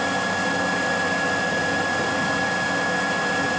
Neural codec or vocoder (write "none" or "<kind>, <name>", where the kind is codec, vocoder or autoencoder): none